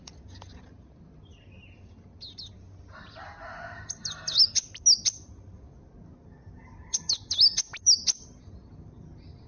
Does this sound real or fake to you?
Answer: real